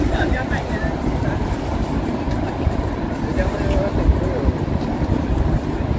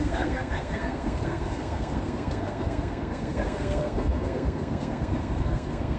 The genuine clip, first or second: first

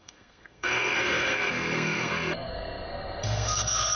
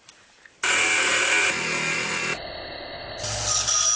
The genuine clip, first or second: second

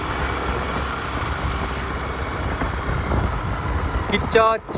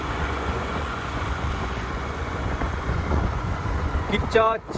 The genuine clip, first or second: first